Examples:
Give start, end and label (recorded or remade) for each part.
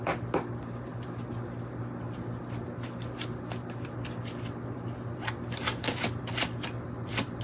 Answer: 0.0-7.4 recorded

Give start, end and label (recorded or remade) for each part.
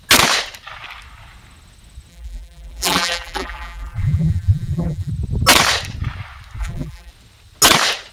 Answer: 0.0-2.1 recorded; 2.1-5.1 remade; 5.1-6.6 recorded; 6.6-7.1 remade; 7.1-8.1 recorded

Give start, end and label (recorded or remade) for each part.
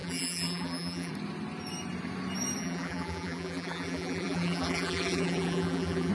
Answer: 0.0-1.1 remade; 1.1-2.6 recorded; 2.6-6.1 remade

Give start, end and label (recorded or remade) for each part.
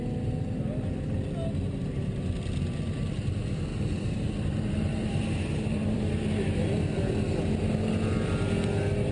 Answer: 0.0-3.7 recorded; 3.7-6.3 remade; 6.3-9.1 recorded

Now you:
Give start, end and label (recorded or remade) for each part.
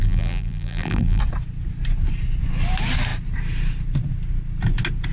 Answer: 0.0-1.2 remade; 1.2-5.1 recorded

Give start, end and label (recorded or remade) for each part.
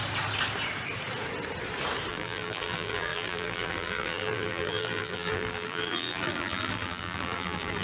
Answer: 0.0-2.1 recorded; 2.1-7.8 remade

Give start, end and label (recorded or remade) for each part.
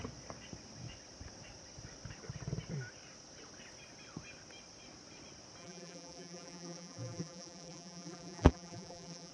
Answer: 0.0-5.6 recorded; 5.6-9.3 remade